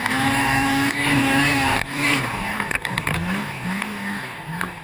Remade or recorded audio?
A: remade